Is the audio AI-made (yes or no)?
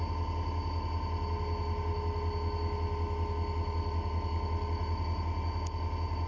no